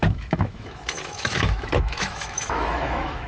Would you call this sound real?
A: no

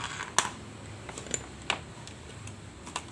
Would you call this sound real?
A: yes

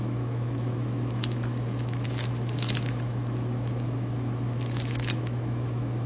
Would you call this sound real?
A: no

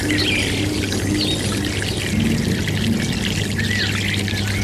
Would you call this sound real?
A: yes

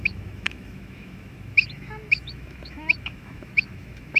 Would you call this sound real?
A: no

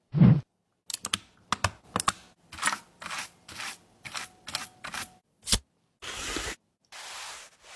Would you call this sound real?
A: yes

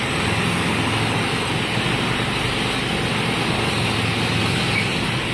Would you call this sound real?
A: yes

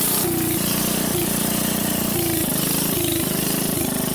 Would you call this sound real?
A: yes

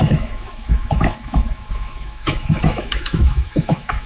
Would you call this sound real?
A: no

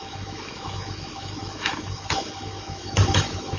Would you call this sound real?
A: no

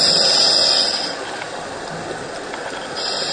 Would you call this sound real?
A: yes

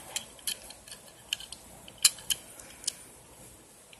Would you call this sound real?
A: yes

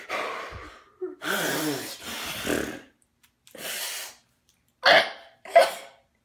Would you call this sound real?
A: yes